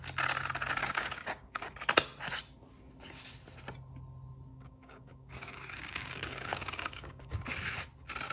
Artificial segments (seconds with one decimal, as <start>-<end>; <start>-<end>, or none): 0.8-1.6; 4.5-7.3

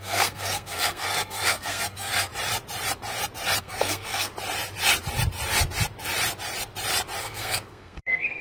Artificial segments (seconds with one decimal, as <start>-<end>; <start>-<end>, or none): 0.0-2.3; 3.6-4.3; 7.2-8.4

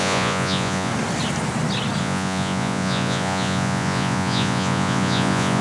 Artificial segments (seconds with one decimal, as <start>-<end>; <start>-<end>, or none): 0.0-0.9; 2.0-5.6